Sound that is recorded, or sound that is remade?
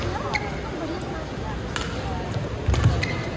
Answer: recorded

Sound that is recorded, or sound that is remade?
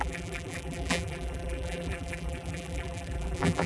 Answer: remade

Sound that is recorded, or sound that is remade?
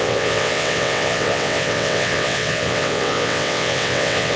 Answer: remade